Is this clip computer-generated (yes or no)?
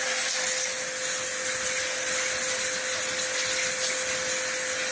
no